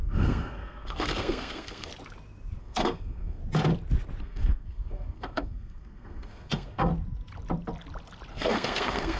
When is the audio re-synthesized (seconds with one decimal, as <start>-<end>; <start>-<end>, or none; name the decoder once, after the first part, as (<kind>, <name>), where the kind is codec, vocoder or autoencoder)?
0.0-1.9 (codec, SNAC); 2.6-3.4; 4.2-6.9; 8.3-9.2